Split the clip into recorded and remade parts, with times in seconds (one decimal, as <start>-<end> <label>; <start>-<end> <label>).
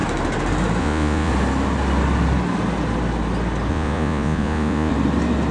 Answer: 0.0-0.8 recorded; 0.8-1.3 remade; 1.3-3.7 recorded; 3.7-4.9 remade; 4.9-5.5 recorded